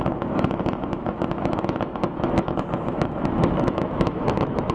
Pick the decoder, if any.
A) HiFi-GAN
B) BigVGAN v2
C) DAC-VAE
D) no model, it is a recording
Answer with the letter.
C